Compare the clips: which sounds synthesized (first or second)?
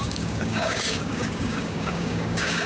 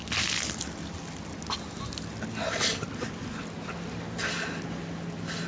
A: first